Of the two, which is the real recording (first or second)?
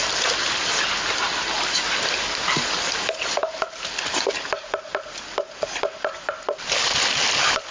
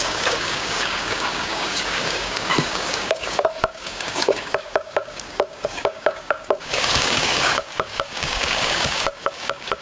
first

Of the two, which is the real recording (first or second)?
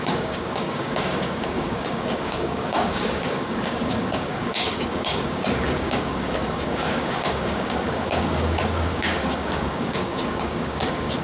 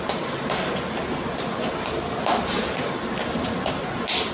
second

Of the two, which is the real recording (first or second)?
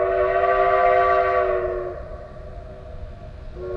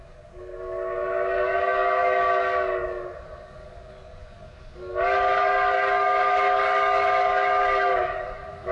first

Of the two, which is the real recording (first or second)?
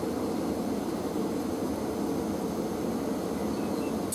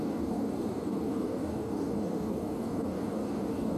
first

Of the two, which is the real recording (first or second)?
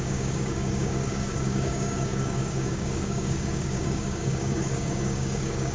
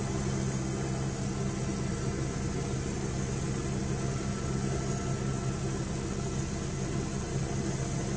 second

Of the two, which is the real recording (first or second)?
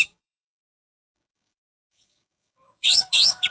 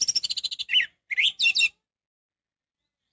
second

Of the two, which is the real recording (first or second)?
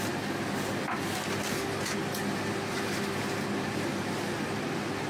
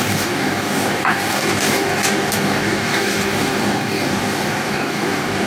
first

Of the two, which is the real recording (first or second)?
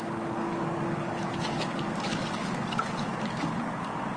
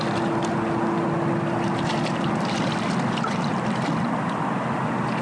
second